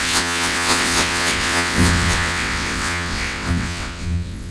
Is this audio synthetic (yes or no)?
yes